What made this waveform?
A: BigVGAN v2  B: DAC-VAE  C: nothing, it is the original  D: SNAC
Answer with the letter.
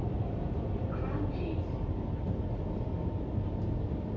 A